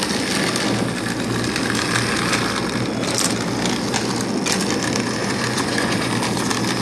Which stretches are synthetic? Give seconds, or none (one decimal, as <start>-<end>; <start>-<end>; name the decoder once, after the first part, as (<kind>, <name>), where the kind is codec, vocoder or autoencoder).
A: 5.2-6.1 (vocoder, Vocos)